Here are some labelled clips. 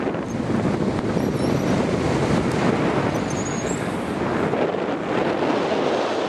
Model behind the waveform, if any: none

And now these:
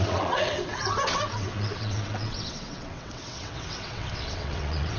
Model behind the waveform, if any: vocoder, WaveNeXt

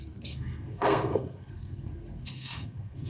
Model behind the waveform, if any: codec, SNAC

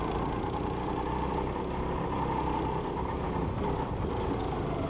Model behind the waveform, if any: none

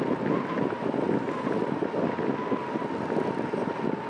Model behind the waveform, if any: none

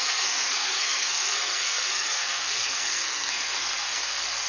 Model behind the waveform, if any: codec, SNAC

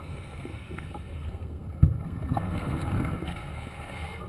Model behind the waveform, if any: codec, SNAC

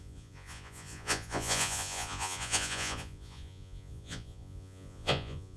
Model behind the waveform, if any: vocoder, Vocos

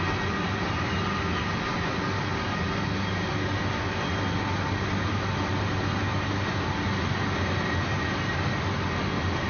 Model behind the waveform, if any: none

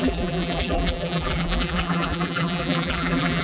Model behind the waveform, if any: vocoder, BigVGAN v2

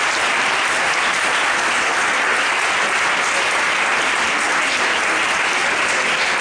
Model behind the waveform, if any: none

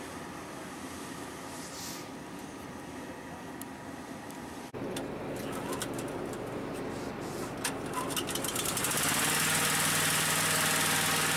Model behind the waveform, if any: none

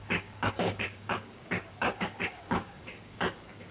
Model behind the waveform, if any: codec, DAC